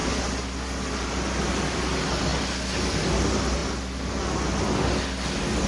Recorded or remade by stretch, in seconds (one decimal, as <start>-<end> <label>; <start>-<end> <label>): 0.0-5.7 recorded

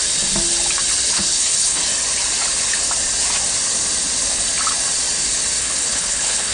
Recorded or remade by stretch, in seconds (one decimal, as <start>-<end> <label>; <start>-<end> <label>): 0.0-1.1 recorded; 1.1-1.8 remade; 1.8-5.6 recorded; 5.6-6.5 remade